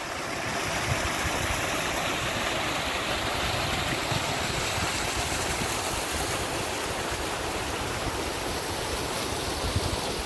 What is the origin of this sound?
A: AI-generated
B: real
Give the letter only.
B